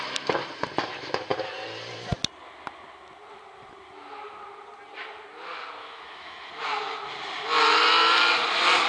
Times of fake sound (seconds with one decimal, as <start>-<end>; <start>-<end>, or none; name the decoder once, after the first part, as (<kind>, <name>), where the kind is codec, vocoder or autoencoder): 5.8-6.5 (autoencoder, DAC-VAE)